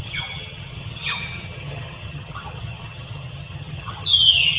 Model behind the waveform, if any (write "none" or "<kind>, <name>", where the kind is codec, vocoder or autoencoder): vocoder, HiFi-GAN